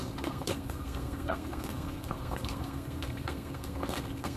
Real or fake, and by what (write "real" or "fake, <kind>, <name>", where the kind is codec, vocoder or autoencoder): fake, codec, SNAC